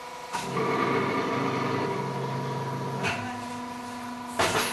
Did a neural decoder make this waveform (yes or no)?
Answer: no